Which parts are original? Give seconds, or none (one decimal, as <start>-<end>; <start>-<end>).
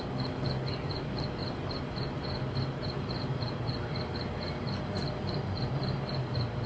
0.0-1.4; 4.1-6.7